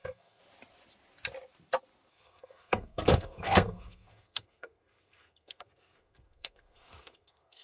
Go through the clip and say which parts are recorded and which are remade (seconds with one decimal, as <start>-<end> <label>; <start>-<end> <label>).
0.0-0.4 remade; 0.4-2.1 recorded; 2.1-7.6 remade